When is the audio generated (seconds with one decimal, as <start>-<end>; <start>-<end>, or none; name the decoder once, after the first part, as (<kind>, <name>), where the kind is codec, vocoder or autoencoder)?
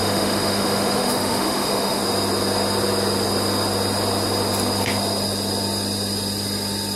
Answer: 0.0-2.0 (autoencoder, DAC-VAE)